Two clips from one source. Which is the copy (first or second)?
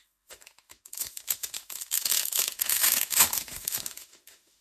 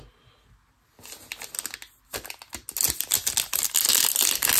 first